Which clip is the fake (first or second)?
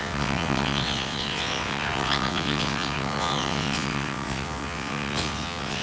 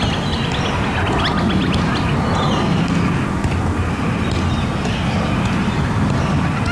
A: first